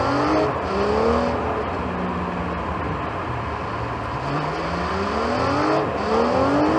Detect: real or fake real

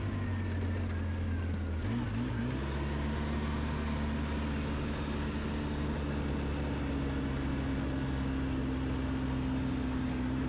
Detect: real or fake real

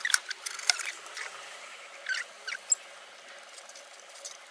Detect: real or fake real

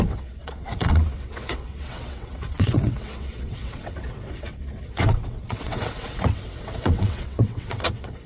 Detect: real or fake fake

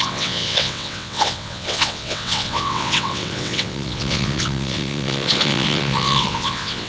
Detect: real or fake fake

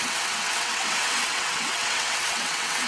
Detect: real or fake fake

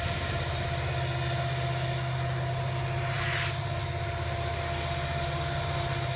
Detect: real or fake real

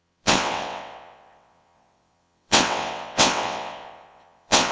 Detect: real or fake fake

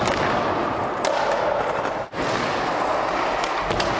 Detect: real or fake real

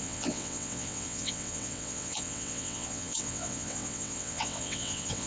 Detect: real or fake fake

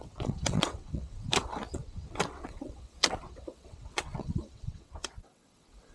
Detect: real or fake fake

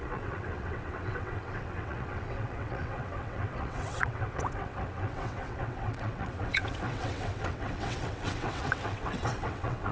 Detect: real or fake fake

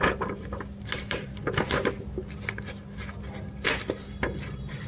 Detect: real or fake real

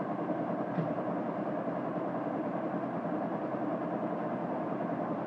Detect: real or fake real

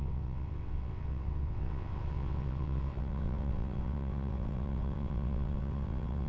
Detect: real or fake fake